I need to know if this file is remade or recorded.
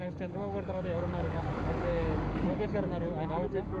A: remade